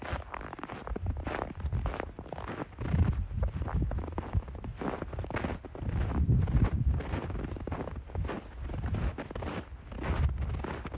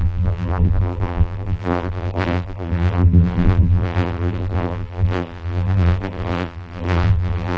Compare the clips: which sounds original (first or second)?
first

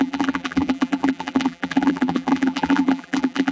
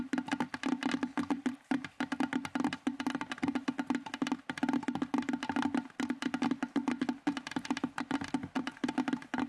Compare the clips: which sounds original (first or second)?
second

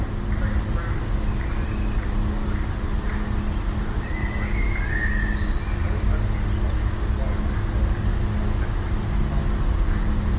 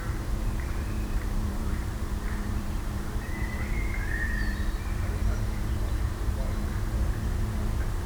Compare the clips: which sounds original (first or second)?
first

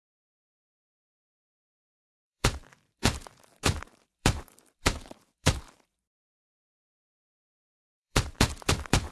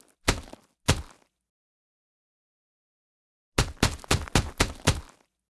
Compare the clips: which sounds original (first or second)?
second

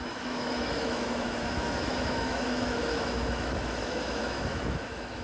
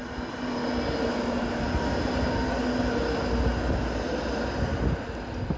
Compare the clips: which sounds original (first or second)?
second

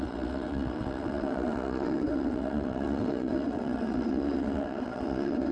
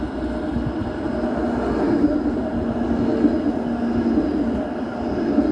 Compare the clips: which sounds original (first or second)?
second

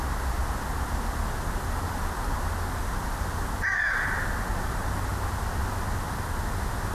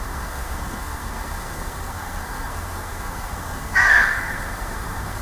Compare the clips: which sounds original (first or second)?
first